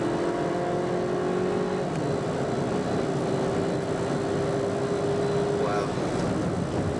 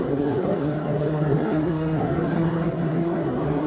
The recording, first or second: first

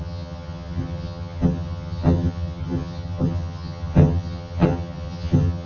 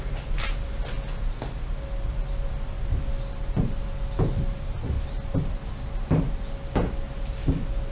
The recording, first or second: second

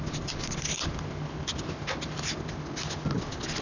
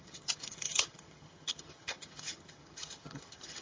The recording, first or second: first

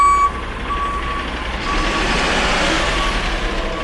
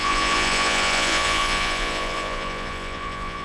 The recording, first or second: first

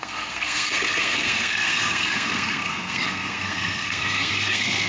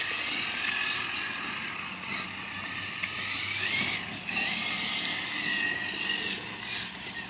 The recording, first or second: second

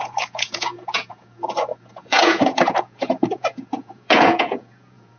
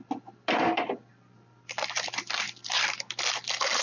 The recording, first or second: second